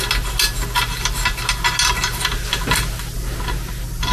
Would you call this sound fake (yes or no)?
no